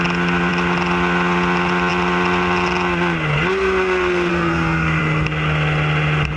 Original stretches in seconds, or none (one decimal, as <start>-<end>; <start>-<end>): 0.0-4.3; 5.0-6.4